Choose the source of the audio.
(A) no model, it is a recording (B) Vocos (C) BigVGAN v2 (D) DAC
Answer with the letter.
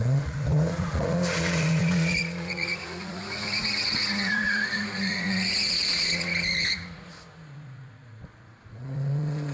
B